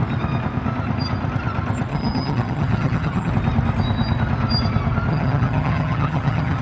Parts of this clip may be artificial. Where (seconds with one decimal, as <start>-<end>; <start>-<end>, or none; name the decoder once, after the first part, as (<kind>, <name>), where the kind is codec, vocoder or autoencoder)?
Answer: 1.9-3.3 (vocoder, HiFi-GAN); 5.1-6.6